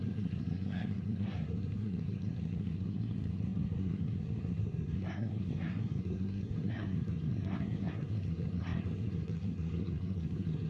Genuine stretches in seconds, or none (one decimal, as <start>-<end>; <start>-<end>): none